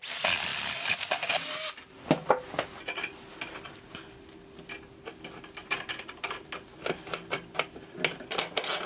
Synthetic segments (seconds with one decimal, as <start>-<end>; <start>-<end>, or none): 5.6-6.3